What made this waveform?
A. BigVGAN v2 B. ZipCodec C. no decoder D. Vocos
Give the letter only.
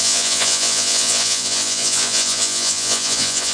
D